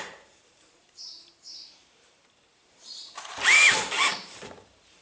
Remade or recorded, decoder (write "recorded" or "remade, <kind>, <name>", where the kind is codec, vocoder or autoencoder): remade, vocoder, BigVGAN v2